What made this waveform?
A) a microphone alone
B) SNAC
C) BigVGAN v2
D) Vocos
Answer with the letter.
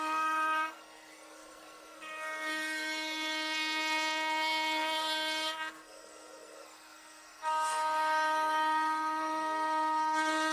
B